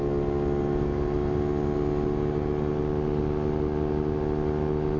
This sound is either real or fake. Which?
real